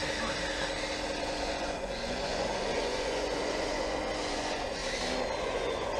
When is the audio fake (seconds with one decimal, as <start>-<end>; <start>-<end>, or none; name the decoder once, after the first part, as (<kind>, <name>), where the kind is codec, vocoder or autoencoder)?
1.2-4.8 (vocoder, Vocos); 5.4-6.0

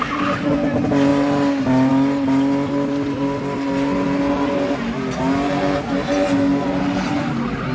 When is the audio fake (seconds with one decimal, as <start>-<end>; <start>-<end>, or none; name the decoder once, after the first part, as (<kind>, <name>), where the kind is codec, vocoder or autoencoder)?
none

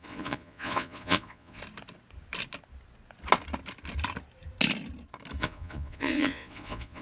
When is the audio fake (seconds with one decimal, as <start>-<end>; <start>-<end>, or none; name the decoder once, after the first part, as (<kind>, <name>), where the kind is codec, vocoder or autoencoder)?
0.0-1.6 (vocoder, Vocos); 5.4-7.0

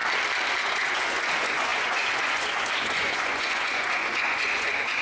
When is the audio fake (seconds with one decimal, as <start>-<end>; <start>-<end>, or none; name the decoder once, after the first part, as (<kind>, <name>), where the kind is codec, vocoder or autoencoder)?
0.6-5.0 (vocoder, Vocos)

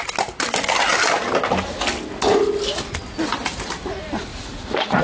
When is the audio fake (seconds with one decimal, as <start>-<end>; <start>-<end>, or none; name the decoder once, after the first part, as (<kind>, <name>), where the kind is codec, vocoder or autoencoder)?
4.3-5.0 (vocoder, Vocos)

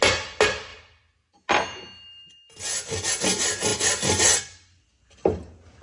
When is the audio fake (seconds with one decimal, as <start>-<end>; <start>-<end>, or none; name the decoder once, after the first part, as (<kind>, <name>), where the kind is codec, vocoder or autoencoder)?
none

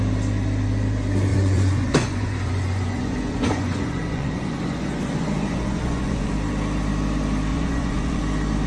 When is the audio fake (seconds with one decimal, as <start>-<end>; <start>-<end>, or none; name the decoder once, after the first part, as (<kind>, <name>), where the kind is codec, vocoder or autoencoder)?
1.3-6.3 (vocoder, Vocos); 7.5-8.2

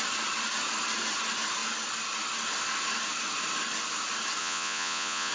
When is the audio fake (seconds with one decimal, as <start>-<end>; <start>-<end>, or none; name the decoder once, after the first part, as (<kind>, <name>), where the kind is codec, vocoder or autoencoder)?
4.4-5.3 (vocoder, Vocos)